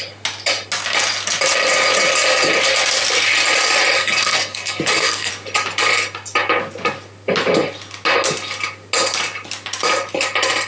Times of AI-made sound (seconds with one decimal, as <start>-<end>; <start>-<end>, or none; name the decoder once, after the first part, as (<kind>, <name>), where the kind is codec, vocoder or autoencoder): 4.0-5.3 (codec, SNAC)